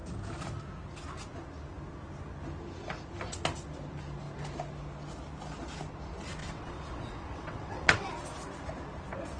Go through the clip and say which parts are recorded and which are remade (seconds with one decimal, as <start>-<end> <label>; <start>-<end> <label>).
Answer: 0.0-6.4 recorded; 6.4-8.1 remade; 8.1-9.4 recorded

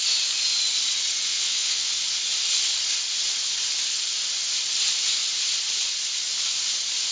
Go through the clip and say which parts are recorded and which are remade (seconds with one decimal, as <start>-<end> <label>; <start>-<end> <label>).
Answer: 0.0-1.3 recorded; 1.3-1.9 remade; 1.9-7.1 recorded

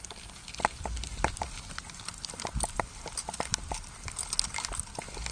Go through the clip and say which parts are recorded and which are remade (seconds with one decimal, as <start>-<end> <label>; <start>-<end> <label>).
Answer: 0.0-5.3 recorded